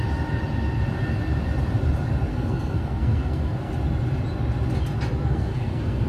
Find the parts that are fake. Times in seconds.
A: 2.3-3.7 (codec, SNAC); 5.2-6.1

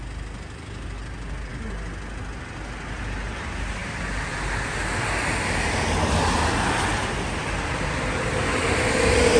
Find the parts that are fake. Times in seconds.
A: none

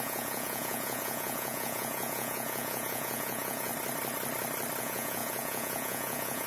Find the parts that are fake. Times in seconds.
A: 0.0-3.7 (vocoder, Vocos); 4.8-6.5

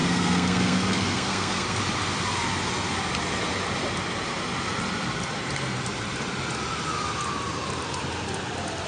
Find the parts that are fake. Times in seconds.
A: 0.0-1.8 (codec, SNAC)

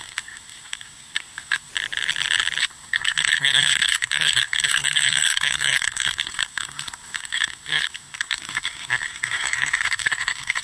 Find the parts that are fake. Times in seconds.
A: 0.0-1.7 (codec, SNAC); 2.6-10.6

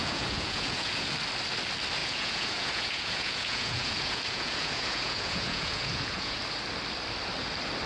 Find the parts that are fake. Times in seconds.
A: 0.0-1.1 (vocoder, Vocos); 2.0-6.4